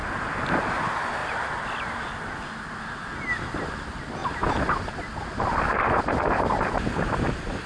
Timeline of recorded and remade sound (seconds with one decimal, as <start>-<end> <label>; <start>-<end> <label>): 0.0-4.2 recorded; 4.2-7.7 remade